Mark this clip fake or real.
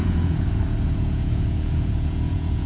fake